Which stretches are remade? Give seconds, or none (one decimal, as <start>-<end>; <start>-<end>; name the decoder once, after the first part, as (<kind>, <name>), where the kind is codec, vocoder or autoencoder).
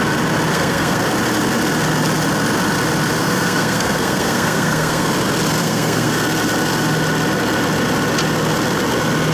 0.5-1.0 (codec, SNAC); 3.2-5.1; 5.6-6.1